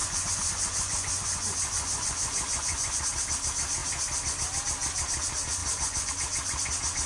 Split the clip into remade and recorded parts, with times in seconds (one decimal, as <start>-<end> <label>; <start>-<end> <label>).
0.0-3.0 remade; 3.0-5.6 recorded; 5.6-6.1 remade; 6.1-7.1 recorded